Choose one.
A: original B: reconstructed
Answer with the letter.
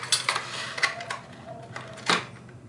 A